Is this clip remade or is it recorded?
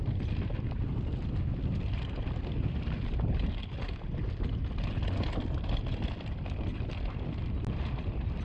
recorded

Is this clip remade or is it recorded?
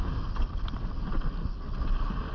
recorded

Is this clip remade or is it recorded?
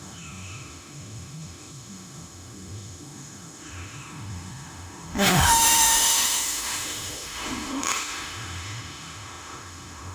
remade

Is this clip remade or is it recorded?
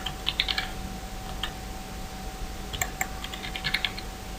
recorded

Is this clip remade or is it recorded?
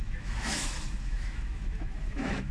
remade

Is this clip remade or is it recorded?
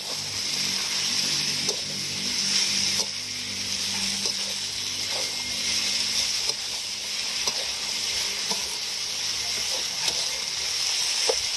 recorded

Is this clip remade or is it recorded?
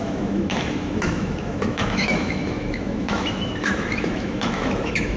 remade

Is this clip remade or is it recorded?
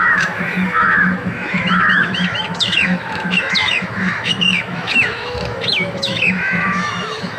remade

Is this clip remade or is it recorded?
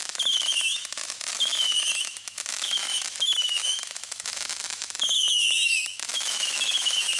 remade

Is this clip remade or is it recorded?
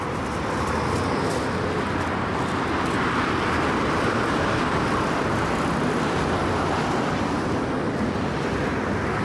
recorded